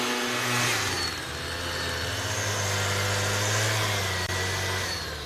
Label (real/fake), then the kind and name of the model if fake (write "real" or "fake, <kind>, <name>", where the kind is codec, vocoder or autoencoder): real